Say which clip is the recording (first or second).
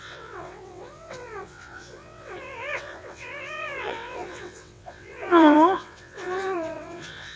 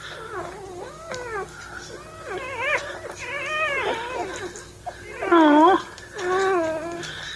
second